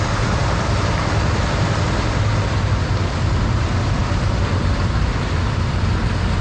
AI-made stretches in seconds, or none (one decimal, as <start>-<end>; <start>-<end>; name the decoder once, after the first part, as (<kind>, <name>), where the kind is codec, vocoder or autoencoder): 0.0-6.4 (vocoder, BigVGAN v2)